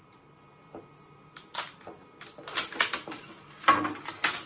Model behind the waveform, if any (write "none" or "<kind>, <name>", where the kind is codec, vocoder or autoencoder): none